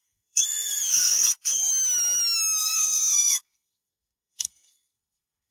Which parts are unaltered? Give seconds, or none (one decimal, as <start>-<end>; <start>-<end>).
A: 1.7-2.6

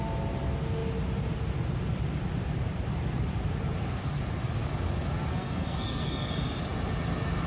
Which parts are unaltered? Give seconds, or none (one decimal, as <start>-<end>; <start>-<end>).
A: 0.0-5.3; 6.3-7.5

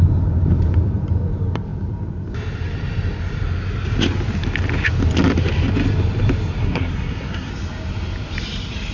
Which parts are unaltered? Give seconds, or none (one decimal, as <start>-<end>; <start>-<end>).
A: 0.0-6.6; 7.5-8.9

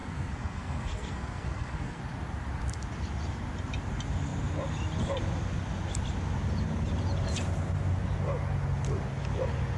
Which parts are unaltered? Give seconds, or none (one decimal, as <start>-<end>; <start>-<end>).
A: 2.0-9.8

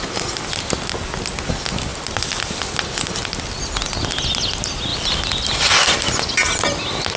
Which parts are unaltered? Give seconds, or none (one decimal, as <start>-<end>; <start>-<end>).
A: 0.0-4.9; 6.2-7.2

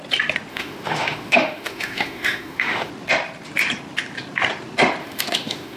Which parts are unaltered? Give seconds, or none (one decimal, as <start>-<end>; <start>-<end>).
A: 0.0-0.5; 2.9-5.0